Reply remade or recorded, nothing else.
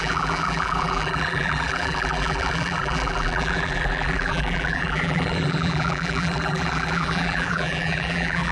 remade